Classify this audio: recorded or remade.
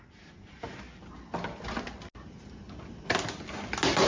recorded